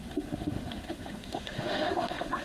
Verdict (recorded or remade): remade